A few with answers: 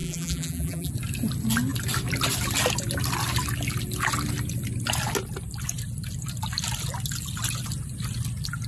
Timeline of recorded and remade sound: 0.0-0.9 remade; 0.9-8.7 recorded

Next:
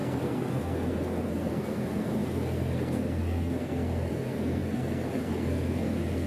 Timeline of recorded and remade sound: 0.0-6.3 remade

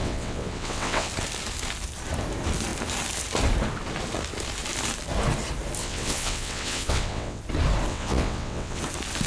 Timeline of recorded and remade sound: 0.0-1.1 remade; 1.1-5.8 recorded; 5.8-7.4 remade; 7.4-7.9 recorded; 7.9-8.8 remade; 8.8-9.3 recorded

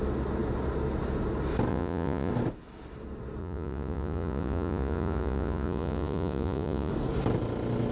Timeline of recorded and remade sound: 0.0-1.7 recorded; 1.7-2.3 remade; 2.3-3.4 recorded; 3.4-6.9 remade; 6.9-7.9 recorded

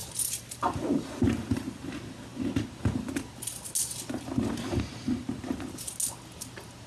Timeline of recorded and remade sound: 0.0-1.9 remade; 1.9-6.9 recorded

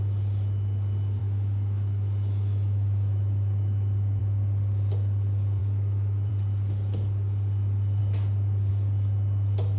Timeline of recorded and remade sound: 0.0-1.2 recorded; 1.2-4.2 remade; 4.2-5.6 recorded; 5.6-6.3 remade; 6.3-9.8 recorded

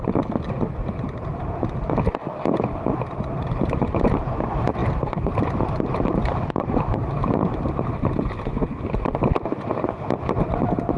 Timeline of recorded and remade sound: 0.0-0.8 recorded; 0.8-1.7 remade; 1.7-3.3 recorded; 3.3-4.2 remade; 4.2-4.8 recorded; 4.8-9.1 remade; 9.1-11.0 recorded